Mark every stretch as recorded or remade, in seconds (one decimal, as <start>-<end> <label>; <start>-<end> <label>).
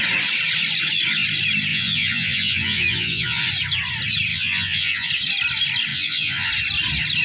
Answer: 0.0-1.7 recorded; 1.7-3.5 remade; 3.5-4.3 recorded; 4.3-5.1 remade; 5.1-5.9 recorded; 5.9-6.5 remade; 6.5-7.2 recorded